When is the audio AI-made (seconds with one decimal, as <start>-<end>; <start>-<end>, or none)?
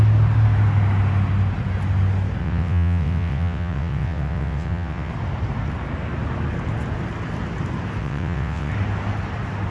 2.4-5.1; 8.0-8.7